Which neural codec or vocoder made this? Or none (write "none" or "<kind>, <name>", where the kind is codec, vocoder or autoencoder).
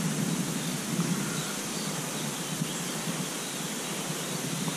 none